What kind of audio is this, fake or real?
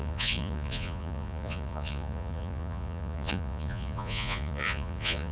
fake